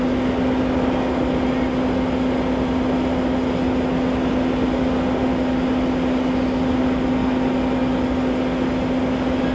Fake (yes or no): no